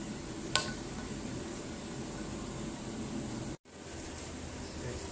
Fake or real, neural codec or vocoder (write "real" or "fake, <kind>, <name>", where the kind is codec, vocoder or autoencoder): real